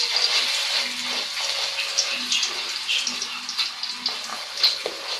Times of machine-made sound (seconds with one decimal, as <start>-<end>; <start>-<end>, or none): 4.3-4.8